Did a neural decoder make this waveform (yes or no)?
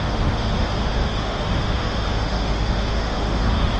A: yes